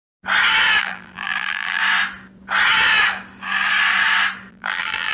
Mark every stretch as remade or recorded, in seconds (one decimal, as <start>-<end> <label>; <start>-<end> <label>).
0.0-0.8 recorded; 0.8-1.8 remade; 1.8-4.5 recorded; 4.5-5.1 remade